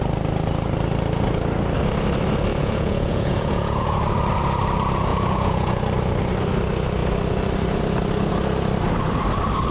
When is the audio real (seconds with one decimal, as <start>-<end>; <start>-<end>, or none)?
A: 0.0-2.5; 4.0-5.1; 5.8-9.7